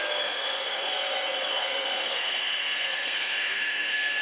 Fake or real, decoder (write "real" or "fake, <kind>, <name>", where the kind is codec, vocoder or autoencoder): fake, codec, SNAC